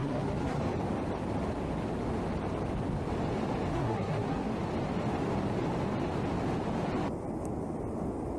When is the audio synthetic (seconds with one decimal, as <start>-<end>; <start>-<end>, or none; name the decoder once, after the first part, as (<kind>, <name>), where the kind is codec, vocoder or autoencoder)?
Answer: 0.0-0.6 (codec, SNAC); 3.7-4.5